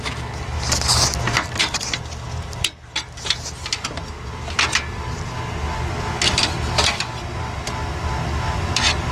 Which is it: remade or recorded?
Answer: recorded